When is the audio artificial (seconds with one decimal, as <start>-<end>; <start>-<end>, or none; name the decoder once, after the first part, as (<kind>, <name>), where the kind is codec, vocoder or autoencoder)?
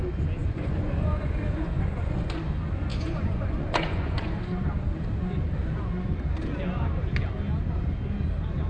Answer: 0.4-2.4 (vocoder, Vocos); 2.9-4.4